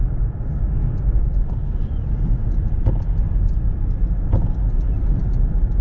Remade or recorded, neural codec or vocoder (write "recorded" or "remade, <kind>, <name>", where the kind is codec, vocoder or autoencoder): recorded